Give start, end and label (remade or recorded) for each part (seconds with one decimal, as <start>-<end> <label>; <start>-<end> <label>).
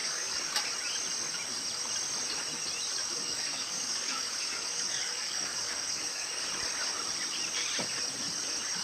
0.0-0.6 remade; 0.6-3.0 recorded; 3.0-6.4 remade; 6.4-8.8 recorded